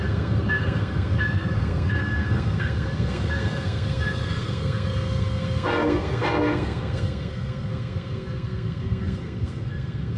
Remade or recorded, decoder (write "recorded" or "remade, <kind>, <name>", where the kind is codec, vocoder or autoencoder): remade, codec, SNAC